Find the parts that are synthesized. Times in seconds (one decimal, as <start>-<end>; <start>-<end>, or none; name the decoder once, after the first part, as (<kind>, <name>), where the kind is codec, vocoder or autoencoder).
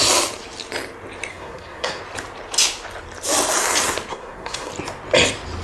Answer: 1.3-2.0 (codec, SNAC); 4.1-4.7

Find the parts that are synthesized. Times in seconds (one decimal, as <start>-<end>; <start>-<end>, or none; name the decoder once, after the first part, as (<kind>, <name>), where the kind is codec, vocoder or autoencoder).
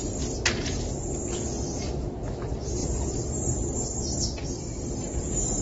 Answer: none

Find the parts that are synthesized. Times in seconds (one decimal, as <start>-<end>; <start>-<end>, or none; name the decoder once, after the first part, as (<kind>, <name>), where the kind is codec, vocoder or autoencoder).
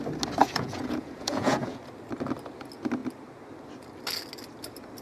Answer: 0.4-1.8 (vocoder, Vocos)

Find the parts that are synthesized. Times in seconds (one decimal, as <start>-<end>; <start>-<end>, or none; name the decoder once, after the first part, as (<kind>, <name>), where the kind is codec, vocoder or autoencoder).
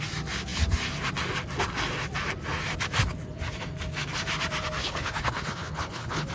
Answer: 4.8-6.3 (codec, HILCodec)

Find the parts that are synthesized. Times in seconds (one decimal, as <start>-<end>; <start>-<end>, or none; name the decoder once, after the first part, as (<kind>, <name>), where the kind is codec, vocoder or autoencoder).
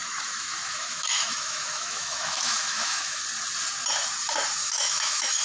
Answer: 0.0-3.2 (autoencoder, DAC-VAE); 4.6-5.4